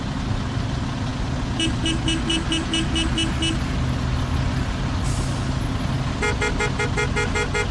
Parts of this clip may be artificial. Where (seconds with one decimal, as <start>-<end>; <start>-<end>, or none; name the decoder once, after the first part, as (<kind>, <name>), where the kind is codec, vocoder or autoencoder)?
none